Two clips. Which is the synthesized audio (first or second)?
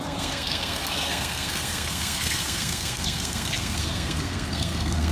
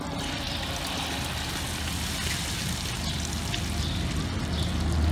first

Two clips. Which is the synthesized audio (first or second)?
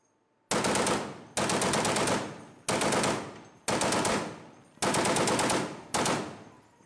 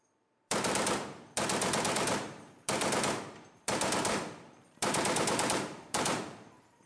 second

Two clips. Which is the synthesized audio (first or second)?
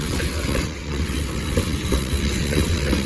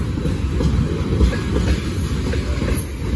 first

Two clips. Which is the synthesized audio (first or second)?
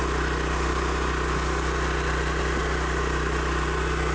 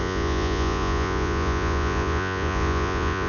second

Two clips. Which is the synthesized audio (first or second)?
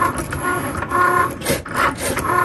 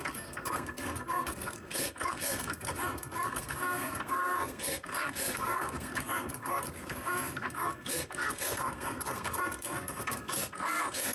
second